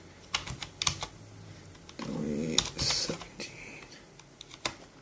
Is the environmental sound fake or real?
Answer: real